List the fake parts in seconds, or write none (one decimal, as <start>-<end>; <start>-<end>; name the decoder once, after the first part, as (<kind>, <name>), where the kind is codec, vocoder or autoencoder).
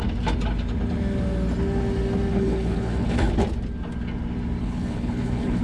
2.3-3.3 (codec, HILCodec); 4.6-5.6